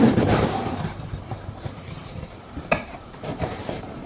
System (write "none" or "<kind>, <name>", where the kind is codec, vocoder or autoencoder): vocoder, BigVGAN v2